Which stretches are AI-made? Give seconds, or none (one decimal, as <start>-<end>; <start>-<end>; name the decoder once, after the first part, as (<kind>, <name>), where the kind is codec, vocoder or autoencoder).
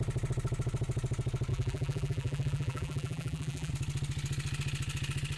1.5-3.7 (vocoder, BigVGAN v2)